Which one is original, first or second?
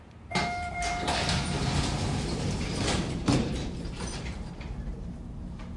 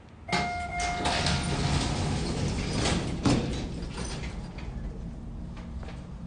second